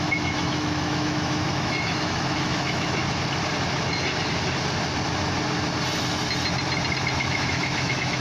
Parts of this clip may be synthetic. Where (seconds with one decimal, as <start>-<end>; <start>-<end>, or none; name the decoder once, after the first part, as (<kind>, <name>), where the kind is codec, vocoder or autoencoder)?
0.0-3.0 (autoencoder, DAC-VAE); 7.2-8.2